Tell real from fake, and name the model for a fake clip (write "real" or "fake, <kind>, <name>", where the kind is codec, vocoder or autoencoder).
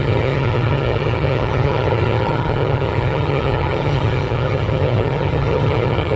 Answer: fake, vocoder, HiFi-GAN